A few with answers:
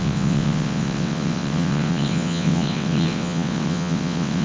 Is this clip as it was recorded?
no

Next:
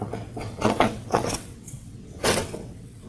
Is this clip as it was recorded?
no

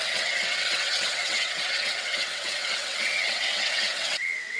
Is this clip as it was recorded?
no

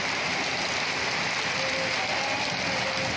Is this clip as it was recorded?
yes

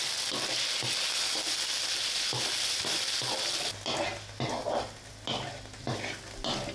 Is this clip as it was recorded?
yes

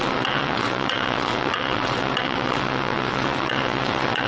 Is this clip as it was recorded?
no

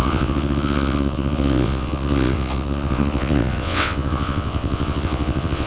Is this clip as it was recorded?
no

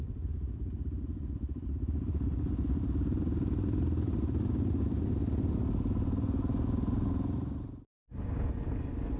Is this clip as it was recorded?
yes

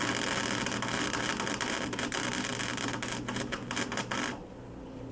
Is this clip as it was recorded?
yes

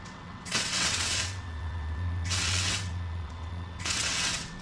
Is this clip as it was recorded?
no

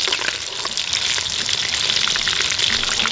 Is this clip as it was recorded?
yes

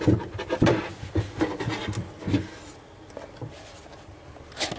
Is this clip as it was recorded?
yes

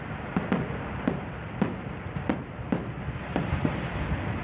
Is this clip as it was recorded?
yes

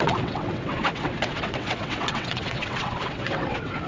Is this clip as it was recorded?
no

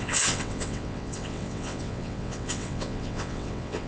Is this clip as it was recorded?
no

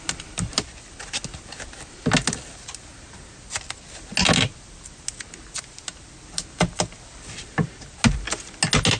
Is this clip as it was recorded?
yes